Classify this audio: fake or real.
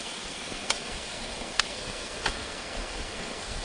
fake